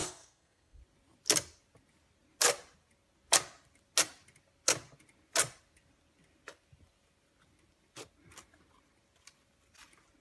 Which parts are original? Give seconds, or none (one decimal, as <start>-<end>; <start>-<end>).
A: 0.8-10.2

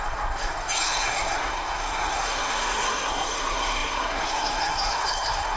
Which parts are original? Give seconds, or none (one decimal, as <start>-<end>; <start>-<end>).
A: none

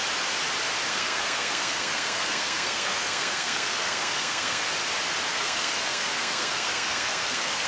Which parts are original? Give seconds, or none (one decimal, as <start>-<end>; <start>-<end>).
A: 0.0-0.9; 4.7-5.3

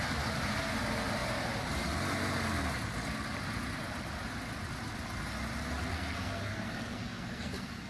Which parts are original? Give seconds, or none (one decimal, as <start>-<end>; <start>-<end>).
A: 0.0-5.9